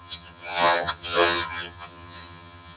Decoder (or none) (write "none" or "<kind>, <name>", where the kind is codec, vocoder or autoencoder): vocoder, HiFi-GAN